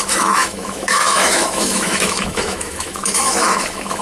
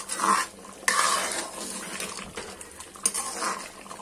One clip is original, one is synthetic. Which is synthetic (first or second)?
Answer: first